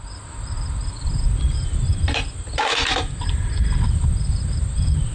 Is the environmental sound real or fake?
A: fake